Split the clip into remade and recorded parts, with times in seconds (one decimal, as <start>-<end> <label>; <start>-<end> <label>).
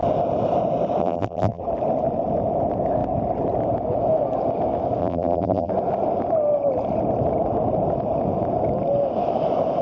0.0-1.0 recorded; 1.0-1.6 remade; 1.6-5.0 recorded; 5.0-5.7 remade; 5.7-9.8 recorded